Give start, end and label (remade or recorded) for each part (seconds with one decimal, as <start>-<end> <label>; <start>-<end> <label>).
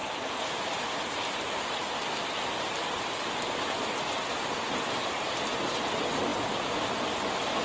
0.0-7.6 recorded